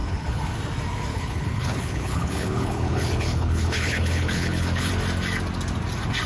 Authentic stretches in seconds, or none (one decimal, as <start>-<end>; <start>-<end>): 0.6-1.1; 4.9-6.3